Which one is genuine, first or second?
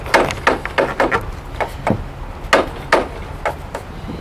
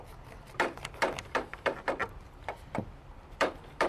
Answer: first